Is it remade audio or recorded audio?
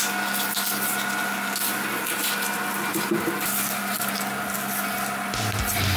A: recorded